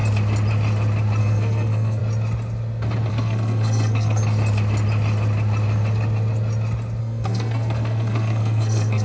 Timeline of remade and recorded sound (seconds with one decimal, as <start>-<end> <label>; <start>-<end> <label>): 0.0-1.2 recorded; 1.2-2.0 remade; 2.0-3.1 recorded; 3.1-4.2 remade; 4.2-7.0 recorded; 7.0-9.0 remade